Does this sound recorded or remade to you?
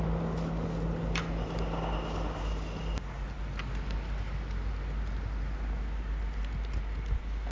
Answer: recorded